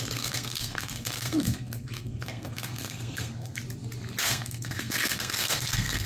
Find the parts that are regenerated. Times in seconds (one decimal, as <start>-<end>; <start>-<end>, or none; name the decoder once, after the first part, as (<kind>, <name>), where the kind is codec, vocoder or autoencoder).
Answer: 0.0-3.6 (codec, SNAC); 4.2-6.1